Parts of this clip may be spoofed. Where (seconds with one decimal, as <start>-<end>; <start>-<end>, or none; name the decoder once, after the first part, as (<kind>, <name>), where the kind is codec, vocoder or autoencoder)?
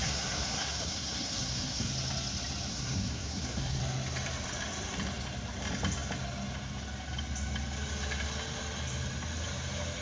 0.0-1.9 (codec, SNAC); 2.7-3.8